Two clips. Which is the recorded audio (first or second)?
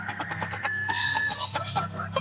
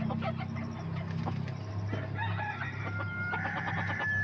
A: second